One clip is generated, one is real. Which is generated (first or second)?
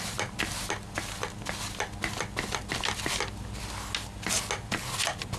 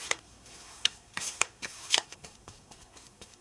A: second